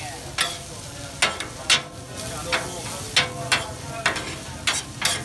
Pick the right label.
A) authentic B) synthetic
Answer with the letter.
A